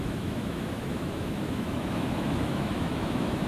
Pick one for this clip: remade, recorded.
remade